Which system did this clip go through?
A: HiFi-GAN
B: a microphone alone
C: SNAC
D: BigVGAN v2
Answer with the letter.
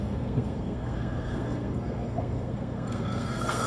C